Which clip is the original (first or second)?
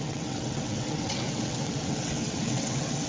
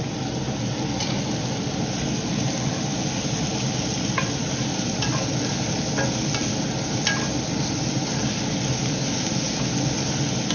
second